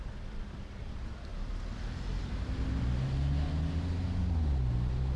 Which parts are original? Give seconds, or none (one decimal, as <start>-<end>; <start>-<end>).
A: 0.0-5.2